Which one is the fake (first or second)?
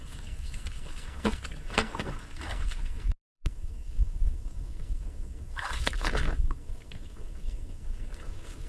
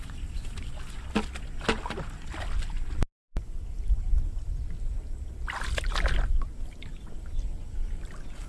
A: first